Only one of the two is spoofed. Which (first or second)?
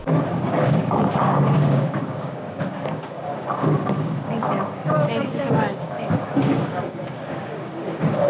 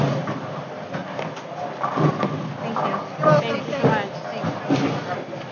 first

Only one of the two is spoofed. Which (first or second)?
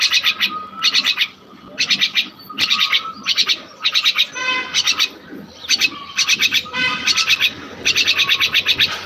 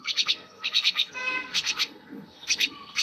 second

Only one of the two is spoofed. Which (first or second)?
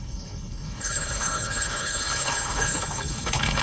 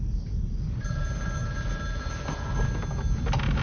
first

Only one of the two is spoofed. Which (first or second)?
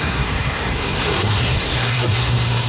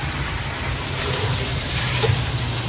first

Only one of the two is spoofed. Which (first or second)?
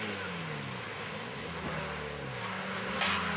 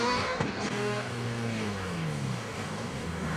second